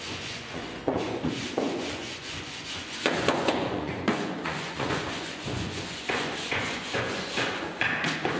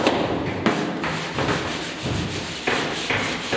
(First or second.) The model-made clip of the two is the first